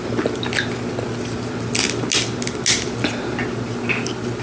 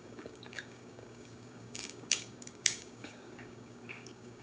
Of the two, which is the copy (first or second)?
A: second